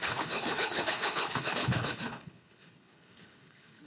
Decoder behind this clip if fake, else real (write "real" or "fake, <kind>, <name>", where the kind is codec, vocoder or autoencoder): fake, codec, HILCodec